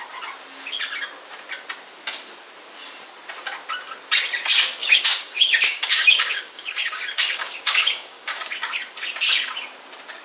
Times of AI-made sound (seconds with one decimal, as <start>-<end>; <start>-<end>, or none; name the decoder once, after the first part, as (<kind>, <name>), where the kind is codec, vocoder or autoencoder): 4.8-8.4 (codec, DAC)